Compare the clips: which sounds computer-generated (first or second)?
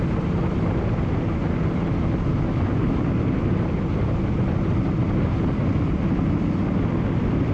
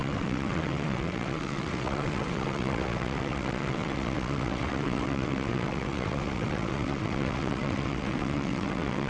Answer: second